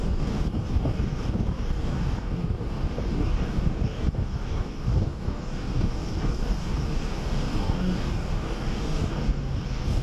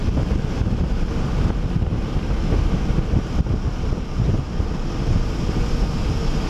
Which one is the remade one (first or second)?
first